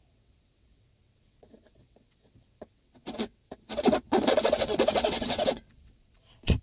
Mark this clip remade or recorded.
remade